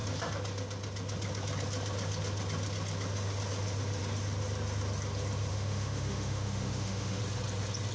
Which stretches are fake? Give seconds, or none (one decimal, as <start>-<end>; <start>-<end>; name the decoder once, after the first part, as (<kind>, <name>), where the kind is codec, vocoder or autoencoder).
5.5-7.2 (autoencoder, DAC-VAE)